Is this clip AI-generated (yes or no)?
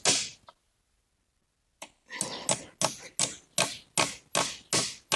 no